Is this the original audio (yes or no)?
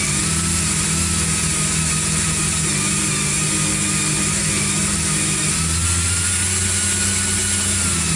yes